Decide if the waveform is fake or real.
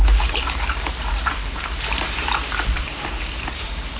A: fake